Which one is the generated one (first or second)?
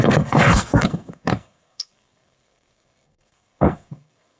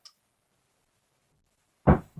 first